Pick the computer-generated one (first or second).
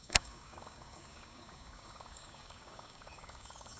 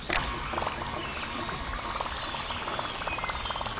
first